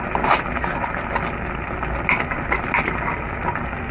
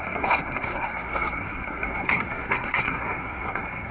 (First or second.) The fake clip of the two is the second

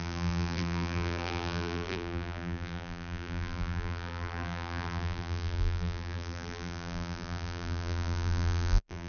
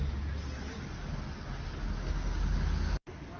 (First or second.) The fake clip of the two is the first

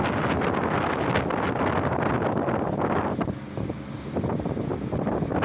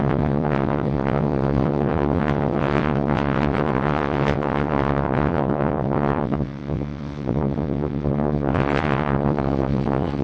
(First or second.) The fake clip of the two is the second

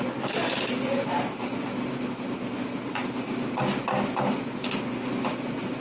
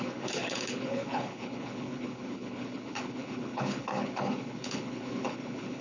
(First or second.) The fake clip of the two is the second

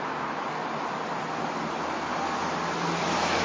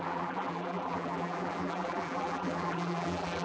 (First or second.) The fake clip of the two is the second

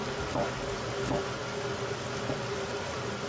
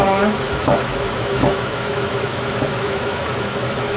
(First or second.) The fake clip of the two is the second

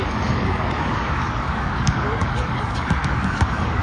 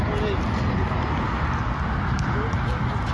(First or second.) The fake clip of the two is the first